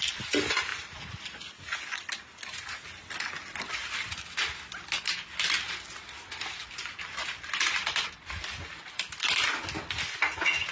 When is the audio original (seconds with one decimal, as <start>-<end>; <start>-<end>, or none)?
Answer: 0.0-10.7